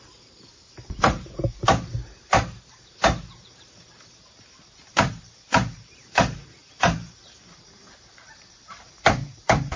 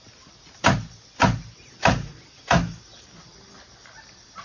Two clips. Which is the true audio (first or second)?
second